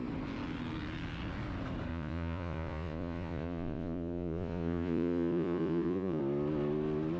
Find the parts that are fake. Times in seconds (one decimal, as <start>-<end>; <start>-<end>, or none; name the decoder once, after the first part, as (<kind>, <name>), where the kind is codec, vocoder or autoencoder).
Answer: 1.9-6.2 (vocoder, Vocos)